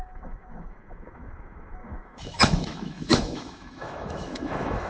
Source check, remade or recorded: remade